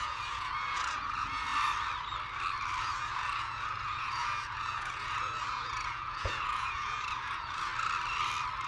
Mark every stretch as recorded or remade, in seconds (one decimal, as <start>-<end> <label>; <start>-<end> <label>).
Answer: 0.0-1.5 remade; 1.5-2.8 recorded; 2.8-7.7 remade; 7.7-8.7 recorded